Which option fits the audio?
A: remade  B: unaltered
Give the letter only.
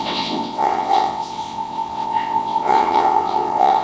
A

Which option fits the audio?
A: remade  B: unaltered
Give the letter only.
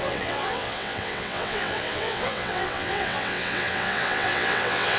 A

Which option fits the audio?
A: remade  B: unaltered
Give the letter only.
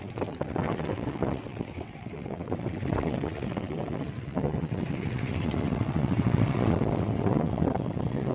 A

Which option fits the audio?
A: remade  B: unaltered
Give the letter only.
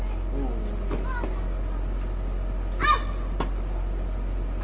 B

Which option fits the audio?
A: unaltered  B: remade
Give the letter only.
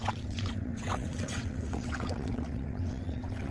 B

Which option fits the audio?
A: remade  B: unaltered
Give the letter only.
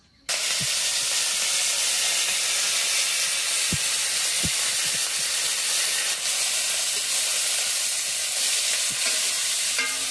B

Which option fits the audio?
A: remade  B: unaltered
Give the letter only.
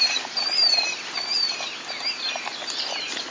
B